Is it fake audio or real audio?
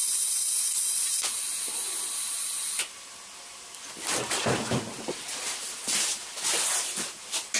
real